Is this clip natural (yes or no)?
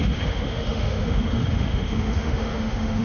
no